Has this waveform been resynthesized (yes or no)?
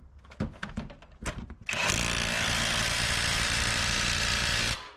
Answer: no